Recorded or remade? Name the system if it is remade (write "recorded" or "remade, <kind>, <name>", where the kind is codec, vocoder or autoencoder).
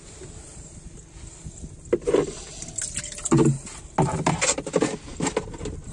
recorded